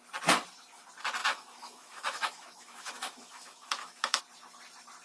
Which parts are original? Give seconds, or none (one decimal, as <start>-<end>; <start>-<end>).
0.0-1.2; 4.2-5.0